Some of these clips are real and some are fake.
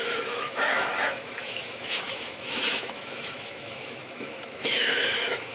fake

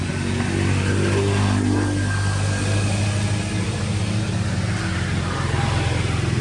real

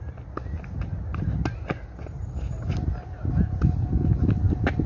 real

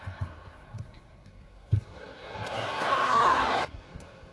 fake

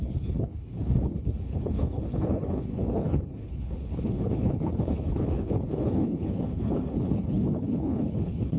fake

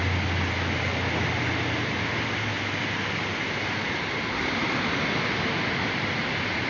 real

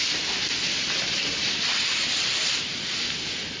fake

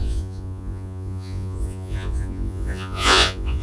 fake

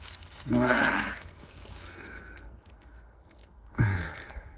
fake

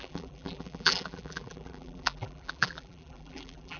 fake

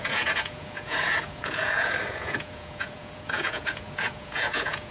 fake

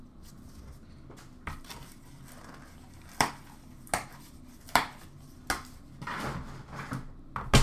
real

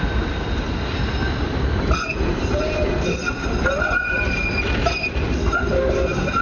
real